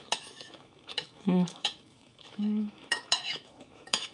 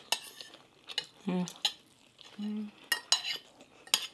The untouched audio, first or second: second